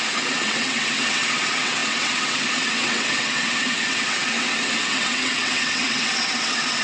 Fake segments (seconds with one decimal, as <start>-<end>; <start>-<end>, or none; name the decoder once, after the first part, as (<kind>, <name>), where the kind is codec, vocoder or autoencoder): 0.0-6.8 (vocoder, WaveNeXt)